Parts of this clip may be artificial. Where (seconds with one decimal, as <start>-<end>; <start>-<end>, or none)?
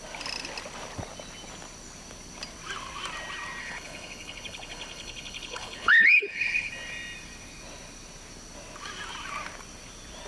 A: 3.6-6.7